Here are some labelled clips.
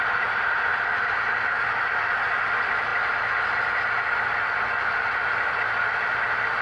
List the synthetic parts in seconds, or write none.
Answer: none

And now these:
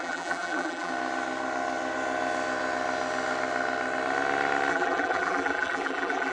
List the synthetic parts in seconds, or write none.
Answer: 0.0-0.9; 4.7-6.3

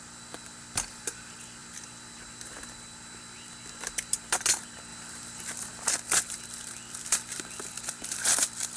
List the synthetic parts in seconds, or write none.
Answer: none

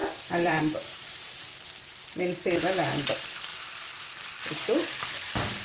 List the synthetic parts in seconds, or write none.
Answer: 0.0-0.6; 3.5-4.2

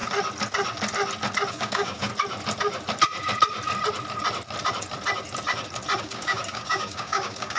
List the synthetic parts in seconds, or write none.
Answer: 1.5-2.1; 6.0-7.6

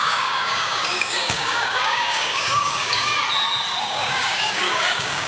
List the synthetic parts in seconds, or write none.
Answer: 0.0-3.1; 3.8-5.3

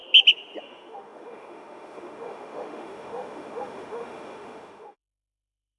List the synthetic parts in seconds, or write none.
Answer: 0.6-5.8